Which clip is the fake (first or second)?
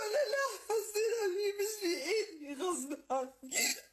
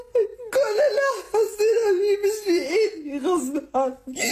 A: first